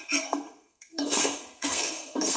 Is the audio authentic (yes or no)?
no